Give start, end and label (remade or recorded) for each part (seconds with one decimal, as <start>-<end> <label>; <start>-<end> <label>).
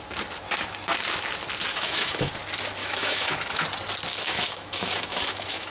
0.0-1.7 recorded; 1.7-2.3 remade; 2.3-2.8 recorded; 2.8-3.3 remade; 3.3-4.1 recorded; 4.1-5.7 remade